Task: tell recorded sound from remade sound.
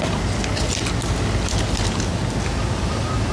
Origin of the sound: recorded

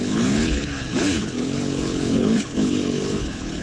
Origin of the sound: remade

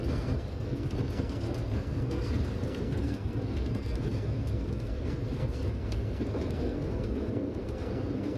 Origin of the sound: remade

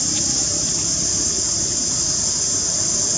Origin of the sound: recorded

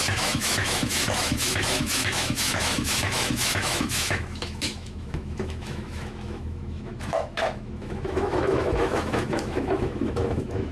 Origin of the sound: remade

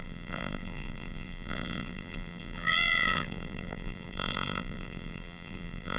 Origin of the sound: remade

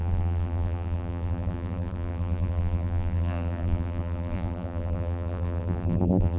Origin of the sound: remade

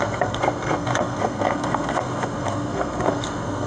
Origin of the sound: remade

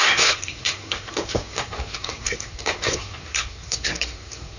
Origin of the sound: remade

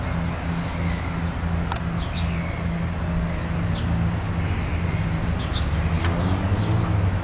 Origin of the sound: recorded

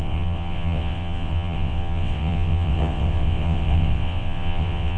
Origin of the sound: remade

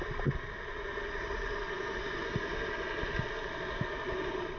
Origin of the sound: recorded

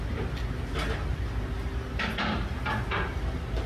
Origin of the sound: recorded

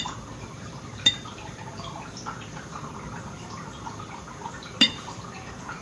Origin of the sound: remade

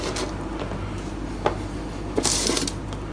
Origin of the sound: recorded